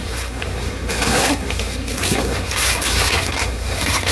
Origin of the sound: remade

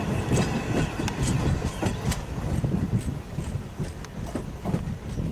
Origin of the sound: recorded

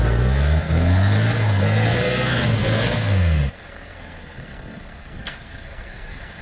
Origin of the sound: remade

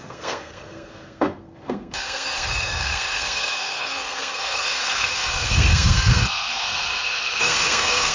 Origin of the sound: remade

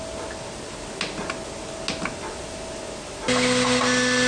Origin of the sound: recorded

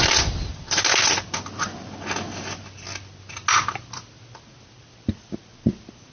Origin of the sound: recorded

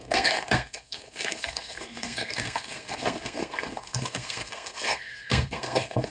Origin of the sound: remade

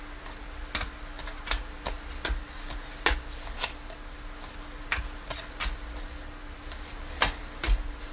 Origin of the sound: recorded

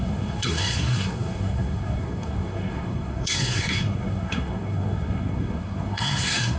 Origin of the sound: remade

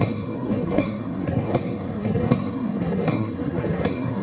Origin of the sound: remade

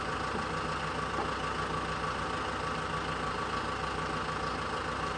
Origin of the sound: recorded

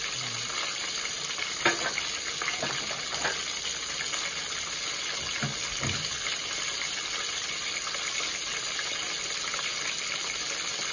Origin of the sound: recorded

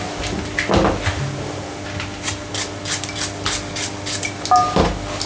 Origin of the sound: recorded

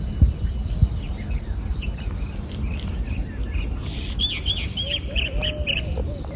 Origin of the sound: recorded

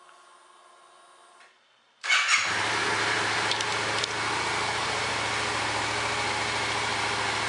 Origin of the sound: recorded